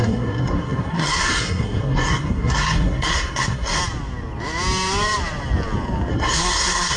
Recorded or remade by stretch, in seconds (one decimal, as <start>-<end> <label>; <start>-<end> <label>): 0.0-3.8 remade; 3.8-6.1 recorded; 6.1-7.0 remade